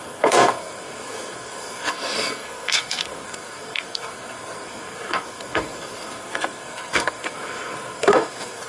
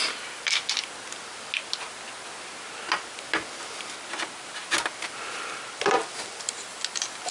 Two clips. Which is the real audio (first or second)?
second